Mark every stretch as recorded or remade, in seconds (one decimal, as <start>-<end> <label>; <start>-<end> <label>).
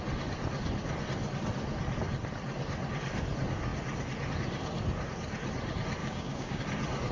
0.0-6.0 recorded; 6.0-6.6 remade; 6.6-7.1 recorded